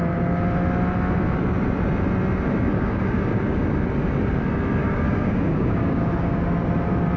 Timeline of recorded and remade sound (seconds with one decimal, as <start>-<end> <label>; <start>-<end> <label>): 0.0-2.7 recorded; 2.7-3.6 remade; 3.6-4.8 recorded; 4.8-6.5 remade; 6.5-7.2 recorded